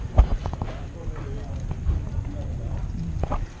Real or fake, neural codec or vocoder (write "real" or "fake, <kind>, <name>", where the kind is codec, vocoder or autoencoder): real